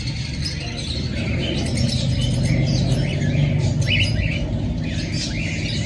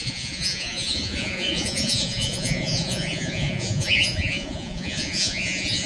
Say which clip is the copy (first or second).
second